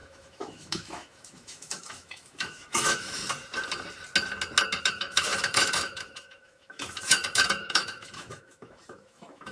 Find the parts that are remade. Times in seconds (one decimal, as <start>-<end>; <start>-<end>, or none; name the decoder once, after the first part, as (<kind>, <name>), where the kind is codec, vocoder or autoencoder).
0.0-3.2 (autoencoder, DAC-VAE); 4.8-9.5